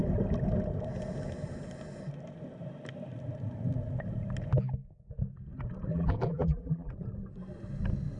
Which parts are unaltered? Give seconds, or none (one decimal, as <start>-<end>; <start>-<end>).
0.0-5.9; 6.9-8.2